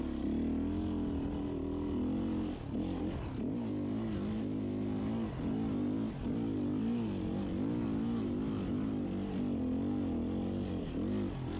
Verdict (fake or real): real